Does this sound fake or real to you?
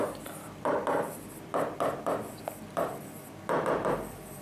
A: real